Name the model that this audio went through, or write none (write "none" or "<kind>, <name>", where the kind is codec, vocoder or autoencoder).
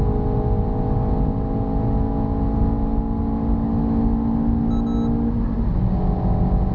none